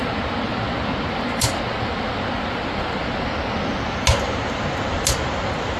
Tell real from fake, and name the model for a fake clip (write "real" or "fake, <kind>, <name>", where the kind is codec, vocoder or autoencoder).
real